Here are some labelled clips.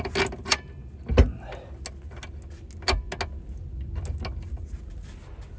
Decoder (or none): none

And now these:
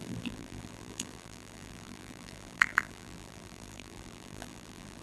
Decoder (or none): vocoder, BigVGAN v2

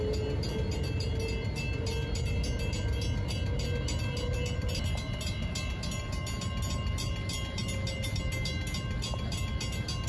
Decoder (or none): none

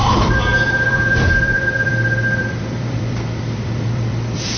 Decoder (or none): vocoder, BigVGAN v2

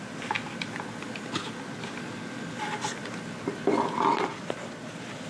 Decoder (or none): none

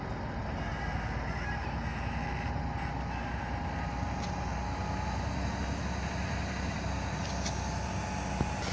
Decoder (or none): none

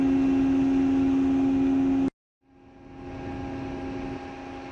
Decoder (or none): none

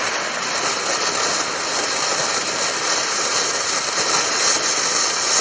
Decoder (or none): none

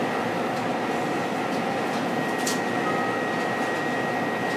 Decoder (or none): none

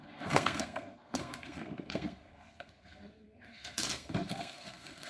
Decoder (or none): codec, SNAC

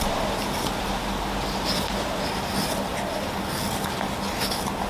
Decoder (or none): none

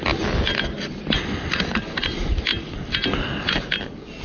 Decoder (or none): none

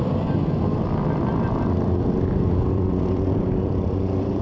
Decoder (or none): vocoder, BigVGAN v2